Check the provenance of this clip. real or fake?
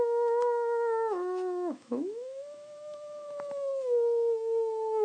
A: fake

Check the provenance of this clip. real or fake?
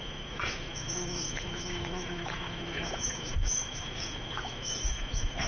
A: fake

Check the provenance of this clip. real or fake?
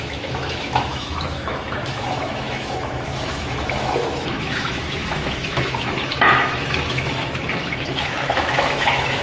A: fake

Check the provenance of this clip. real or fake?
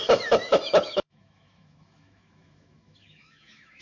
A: fake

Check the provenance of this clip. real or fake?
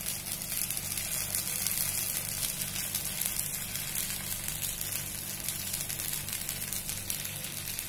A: real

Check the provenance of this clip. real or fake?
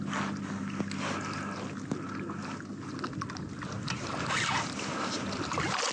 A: real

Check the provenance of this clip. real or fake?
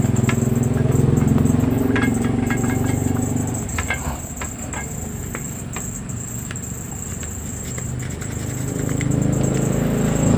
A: real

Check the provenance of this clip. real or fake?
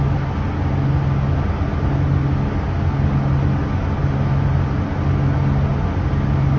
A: real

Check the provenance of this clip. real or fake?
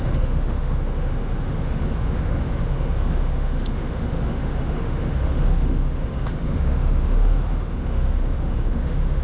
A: fake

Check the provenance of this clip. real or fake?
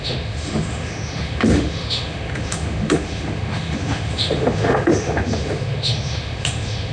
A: fake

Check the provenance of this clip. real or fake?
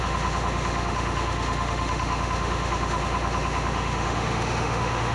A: fake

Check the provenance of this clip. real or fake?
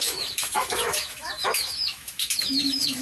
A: fake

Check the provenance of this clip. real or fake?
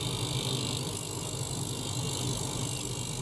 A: real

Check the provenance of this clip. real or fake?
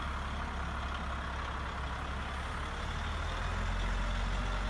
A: real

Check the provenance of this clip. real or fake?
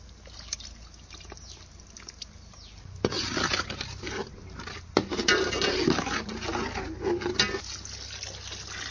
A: real